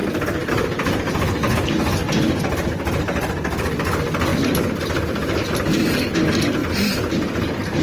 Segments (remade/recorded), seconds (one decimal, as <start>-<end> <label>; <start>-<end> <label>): 0.0-2.0 recorded; 2.0-3.7 remade; 3.7-4.3 recorded; 4.3-5.5 remade; 5.5-6.6 recorded; 6.6-7.8 remade